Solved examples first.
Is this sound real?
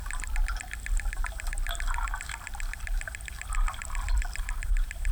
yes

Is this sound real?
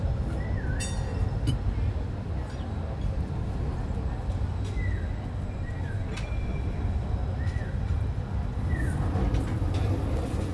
yes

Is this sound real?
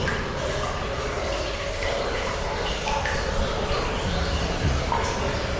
yes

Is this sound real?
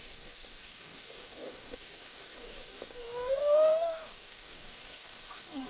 no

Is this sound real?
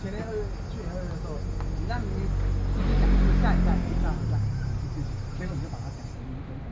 yes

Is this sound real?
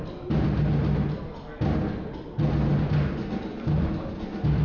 yes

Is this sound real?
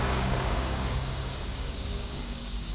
no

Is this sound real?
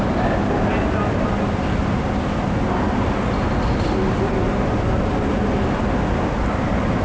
yes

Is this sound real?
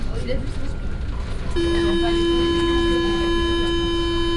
yes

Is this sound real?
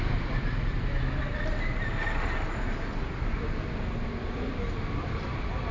yes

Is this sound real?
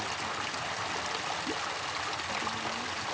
yes